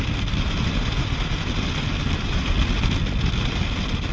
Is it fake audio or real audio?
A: real